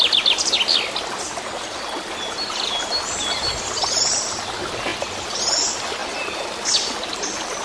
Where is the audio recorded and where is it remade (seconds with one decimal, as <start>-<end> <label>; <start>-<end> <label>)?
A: 0.0-7.6 recorded